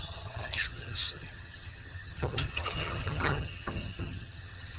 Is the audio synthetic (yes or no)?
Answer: yes